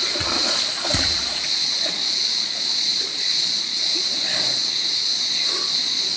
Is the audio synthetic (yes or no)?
yes